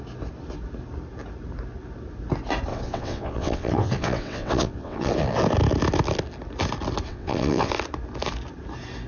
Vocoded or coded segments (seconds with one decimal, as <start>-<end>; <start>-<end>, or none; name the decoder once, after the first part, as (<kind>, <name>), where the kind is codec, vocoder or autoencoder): 2.7-5.1 (vocoder, WaveNeXt); 7.1-7.7